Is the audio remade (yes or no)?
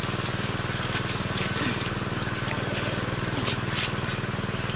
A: no